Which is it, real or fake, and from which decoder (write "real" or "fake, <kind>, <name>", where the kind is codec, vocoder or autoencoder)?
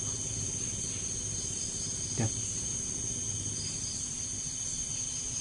fake, vocoder, BigVGAN v2